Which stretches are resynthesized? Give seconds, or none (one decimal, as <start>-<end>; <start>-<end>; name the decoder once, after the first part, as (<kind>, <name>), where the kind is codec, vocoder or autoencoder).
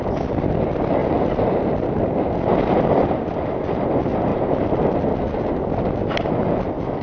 4.3-5.0 (vocoder, BigVGAN v2)